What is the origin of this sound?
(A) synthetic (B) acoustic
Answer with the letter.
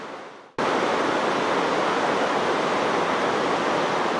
B